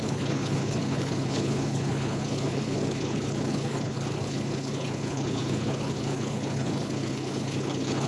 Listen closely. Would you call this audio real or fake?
fake